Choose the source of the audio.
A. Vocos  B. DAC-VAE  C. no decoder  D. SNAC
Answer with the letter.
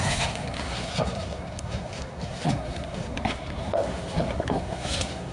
D